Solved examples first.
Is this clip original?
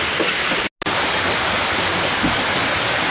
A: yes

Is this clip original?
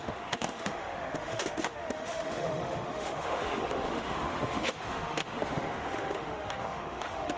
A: no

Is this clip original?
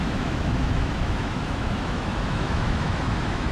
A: no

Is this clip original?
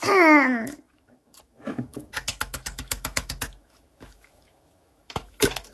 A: no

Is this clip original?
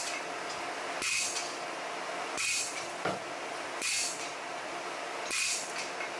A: yes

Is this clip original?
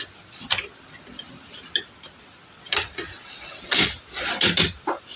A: yes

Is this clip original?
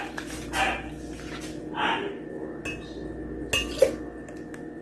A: yes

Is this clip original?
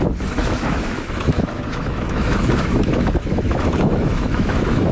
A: no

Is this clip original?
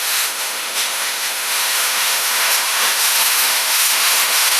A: no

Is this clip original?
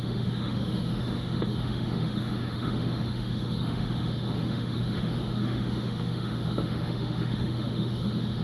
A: no